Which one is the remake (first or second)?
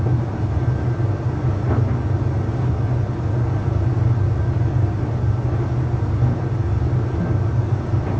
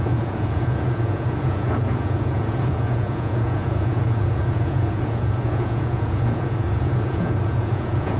second